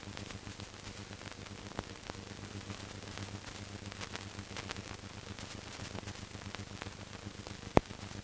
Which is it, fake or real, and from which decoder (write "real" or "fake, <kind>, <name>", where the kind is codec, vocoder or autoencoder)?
real